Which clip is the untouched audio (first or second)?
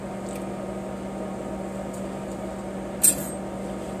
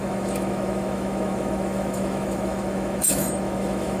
first